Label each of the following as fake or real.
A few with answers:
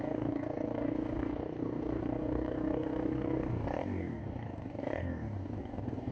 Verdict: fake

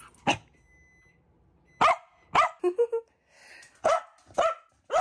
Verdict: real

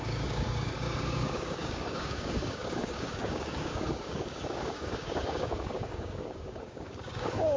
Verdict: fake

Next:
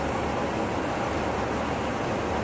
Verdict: real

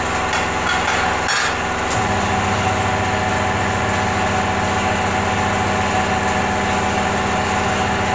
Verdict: real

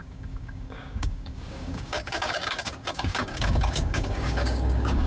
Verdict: fake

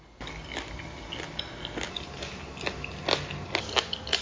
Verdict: real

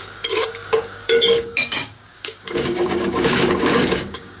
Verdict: fake